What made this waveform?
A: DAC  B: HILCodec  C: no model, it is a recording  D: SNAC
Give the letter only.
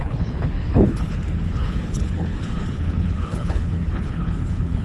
B